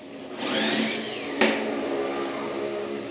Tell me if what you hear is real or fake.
real